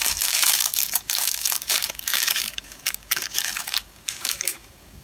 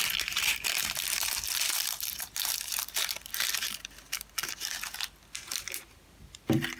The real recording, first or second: second